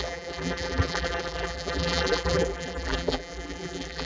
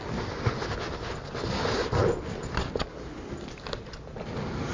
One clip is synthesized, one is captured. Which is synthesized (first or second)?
first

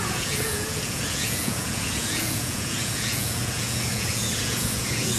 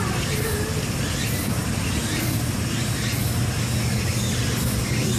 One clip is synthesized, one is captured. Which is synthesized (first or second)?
first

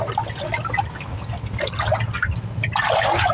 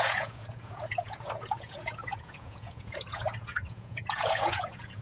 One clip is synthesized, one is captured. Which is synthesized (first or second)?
second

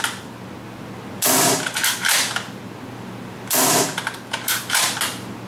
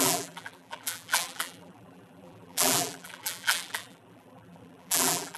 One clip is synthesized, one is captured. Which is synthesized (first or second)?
second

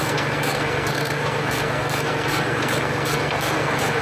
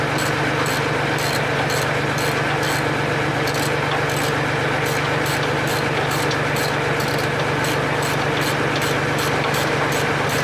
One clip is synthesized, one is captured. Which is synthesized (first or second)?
first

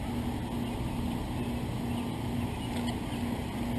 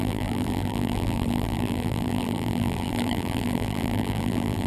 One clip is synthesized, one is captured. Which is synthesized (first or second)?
second